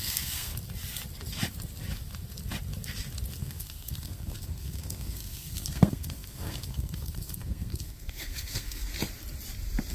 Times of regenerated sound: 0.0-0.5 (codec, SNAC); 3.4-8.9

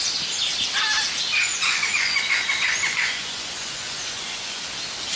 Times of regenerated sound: 1.5-4.6 (vocoder, Vocos)

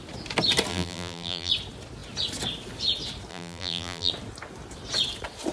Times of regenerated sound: 0.7-1.5 (vocoder, BigVGAN v2); 3.3-4.1